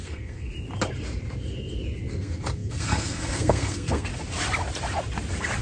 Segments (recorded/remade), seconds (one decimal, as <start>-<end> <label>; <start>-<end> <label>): 0.0-0.5 remade; 0.5-2.1 recorded; 2.1-4.1 remade; 4.1-5.6 recorded